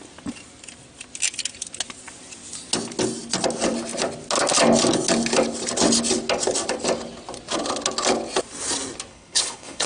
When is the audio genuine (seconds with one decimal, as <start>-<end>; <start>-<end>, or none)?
0.0-9.1